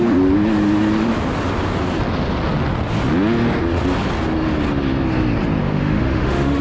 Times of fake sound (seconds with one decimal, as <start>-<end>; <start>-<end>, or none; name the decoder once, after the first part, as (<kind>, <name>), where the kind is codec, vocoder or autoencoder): 5.6-6.6 (autoencoder, DAC-VAE)